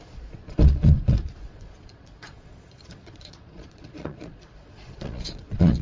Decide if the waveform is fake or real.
fake